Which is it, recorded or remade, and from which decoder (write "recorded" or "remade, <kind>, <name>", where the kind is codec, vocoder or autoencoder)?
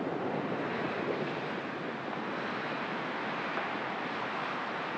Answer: remade, vocoder, BigVGAN v2